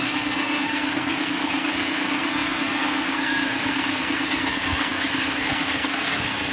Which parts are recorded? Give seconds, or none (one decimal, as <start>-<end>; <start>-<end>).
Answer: none